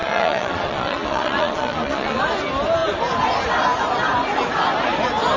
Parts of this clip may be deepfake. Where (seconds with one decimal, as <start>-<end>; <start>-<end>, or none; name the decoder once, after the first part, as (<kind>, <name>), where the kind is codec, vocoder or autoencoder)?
0.0-2.2 (vocoder, Vocos)